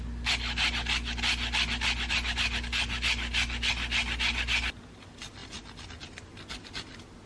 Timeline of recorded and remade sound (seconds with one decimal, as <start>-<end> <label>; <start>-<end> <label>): 0.0-7.3 recorded